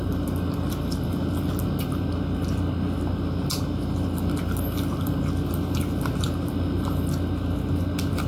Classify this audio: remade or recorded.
recorded